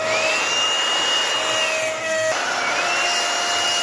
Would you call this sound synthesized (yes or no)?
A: no